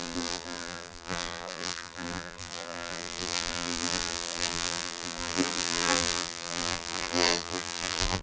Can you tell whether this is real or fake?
fake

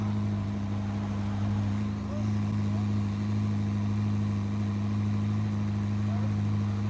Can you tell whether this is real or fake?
real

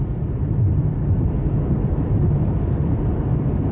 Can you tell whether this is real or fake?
fake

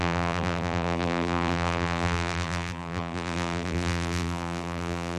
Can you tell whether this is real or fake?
fake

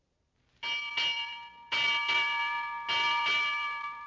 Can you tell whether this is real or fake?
real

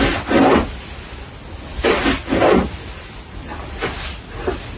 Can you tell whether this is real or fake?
real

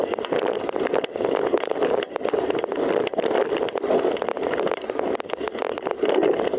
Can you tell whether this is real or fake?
real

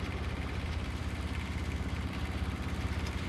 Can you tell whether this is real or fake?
fake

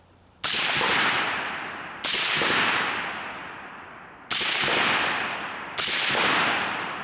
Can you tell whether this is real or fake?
fake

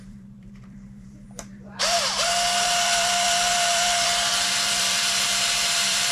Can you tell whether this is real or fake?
fake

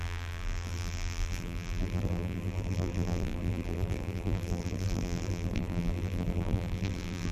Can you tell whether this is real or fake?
fake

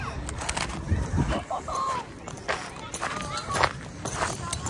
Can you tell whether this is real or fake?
real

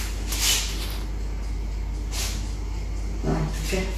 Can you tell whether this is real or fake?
real